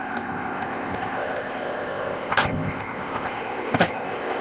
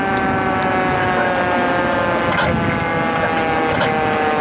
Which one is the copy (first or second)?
first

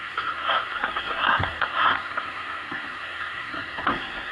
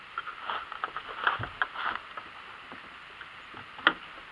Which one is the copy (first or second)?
first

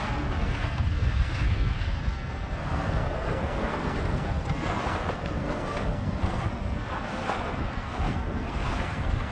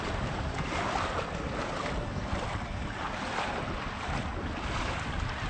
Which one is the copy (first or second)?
first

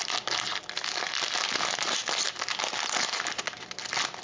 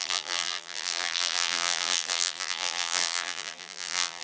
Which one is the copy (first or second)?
second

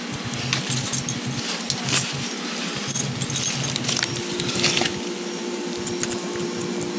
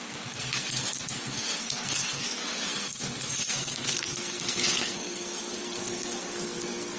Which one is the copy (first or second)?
second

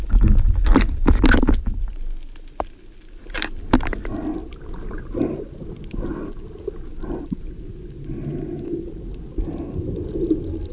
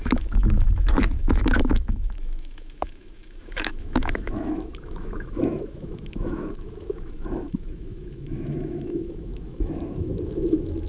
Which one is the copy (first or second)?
second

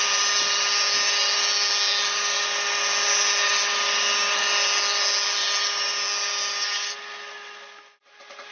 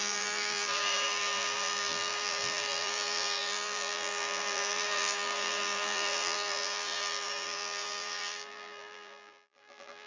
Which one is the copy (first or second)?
second